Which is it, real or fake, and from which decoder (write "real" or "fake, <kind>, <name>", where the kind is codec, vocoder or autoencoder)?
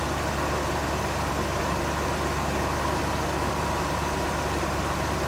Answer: real